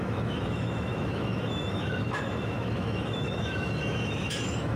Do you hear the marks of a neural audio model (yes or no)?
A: yes